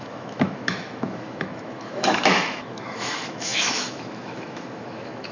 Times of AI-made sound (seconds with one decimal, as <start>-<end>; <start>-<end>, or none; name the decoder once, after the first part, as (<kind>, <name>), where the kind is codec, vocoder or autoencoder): 0.0-5.3 (autoencoder, DAC-VAE)